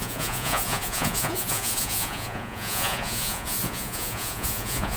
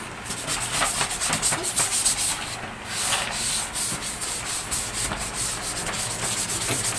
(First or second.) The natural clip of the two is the second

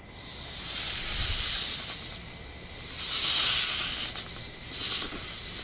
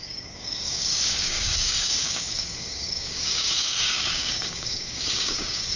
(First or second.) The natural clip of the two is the first